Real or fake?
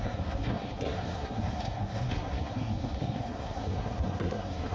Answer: fake